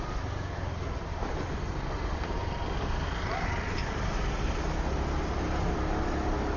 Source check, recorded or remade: recorded